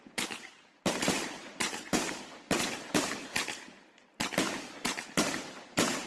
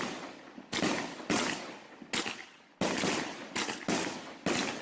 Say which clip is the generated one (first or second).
first